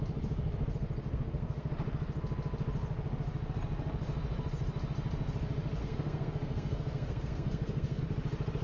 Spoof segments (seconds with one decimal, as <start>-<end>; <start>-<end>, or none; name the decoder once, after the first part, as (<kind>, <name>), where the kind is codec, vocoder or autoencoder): 1.0-1.7 (codec, SNAC); 5.8-8.0